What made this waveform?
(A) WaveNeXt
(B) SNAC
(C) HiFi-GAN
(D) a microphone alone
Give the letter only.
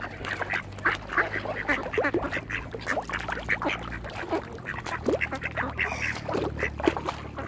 D